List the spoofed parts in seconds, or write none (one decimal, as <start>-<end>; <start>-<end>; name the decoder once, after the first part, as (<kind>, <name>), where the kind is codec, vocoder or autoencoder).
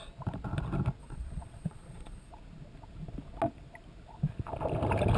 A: 1.0-2.3 (vocoder, Vocos)